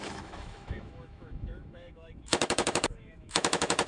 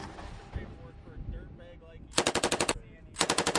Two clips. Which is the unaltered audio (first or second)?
second